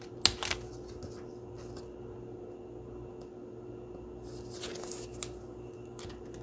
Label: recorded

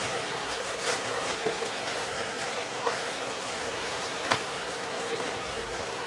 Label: remade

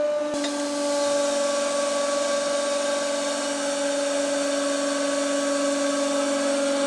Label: recorded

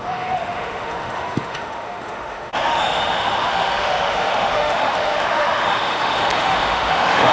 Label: remade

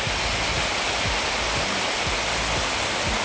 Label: recorded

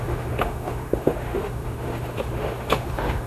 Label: remade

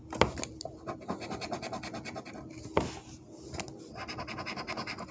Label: recorded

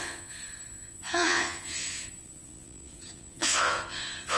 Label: remade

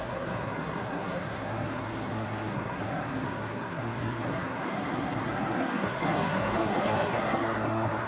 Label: remade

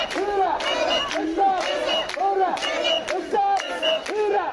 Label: recorded